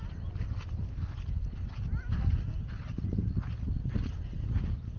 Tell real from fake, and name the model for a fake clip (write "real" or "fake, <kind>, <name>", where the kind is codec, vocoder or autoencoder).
real